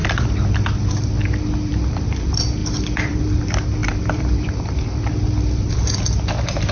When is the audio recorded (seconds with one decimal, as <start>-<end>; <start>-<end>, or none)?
0.0-1.7; 2.2-2.6; 3.4-3.8; 4.5-6.7